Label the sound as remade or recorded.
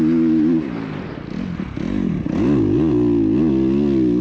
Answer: recorded